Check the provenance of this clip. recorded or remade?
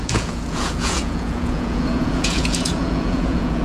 remade